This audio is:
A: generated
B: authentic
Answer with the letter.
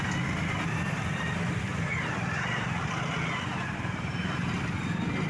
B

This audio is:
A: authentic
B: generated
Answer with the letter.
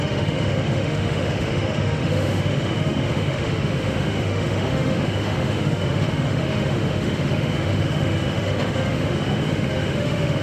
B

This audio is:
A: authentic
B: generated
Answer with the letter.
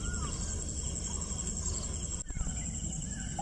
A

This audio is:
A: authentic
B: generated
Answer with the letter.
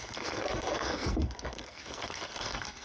B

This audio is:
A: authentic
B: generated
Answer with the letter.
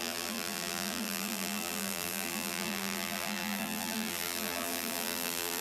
B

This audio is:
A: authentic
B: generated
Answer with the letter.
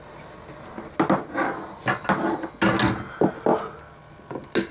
A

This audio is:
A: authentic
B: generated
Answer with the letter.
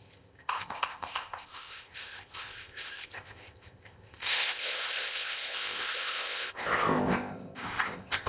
B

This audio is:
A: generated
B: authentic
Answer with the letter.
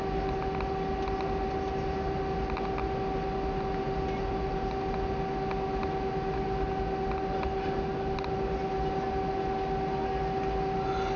B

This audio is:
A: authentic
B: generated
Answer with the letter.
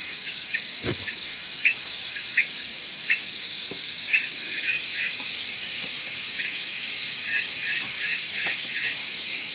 B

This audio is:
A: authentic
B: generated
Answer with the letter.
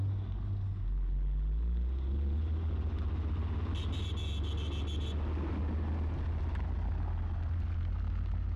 A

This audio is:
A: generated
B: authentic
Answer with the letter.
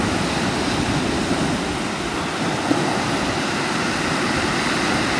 B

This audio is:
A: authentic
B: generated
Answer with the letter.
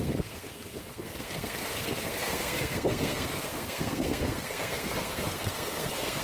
B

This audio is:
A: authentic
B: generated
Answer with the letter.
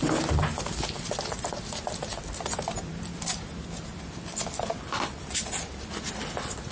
A